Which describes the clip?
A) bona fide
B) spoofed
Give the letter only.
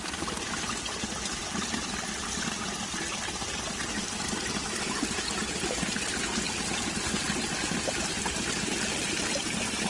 B